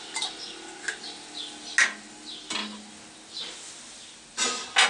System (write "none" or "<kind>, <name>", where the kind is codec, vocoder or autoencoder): none